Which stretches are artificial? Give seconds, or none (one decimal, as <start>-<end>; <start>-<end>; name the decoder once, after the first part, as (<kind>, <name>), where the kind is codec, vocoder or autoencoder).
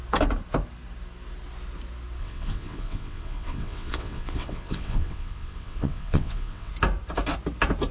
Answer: 2.2-6.7 (vocoder, WaveNeXt)